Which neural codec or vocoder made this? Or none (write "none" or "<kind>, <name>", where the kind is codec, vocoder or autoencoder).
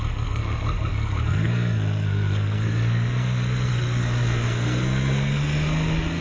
codec, SNAC